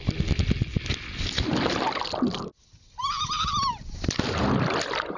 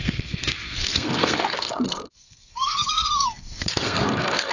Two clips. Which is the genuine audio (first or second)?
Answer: first